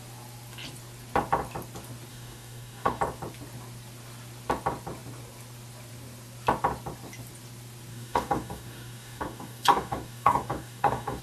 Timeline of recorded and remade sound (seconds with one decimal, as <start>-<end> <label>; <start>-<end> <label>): 0.0-2.1 recorded; 2.1-3.0 remade; 3.0-7.9 recorded; 7.9-11.2 remade